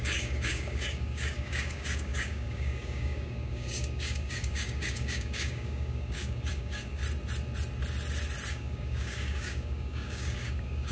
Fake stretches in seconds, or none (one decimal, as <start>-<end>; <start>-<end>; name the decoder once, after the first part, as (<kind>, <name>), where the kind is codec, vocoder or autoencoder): 0.0-7.0 (codec, DAC); 8.5-10.9